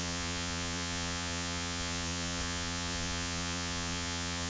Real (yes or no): no